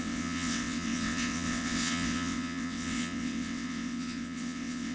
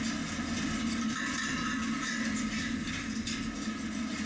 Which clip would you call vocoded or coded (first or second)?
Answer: first